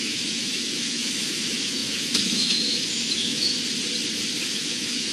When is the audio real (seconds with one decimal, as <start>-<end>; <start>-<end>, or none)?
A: 3.5-4.5